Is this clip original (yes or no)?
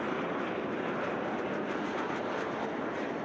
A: yes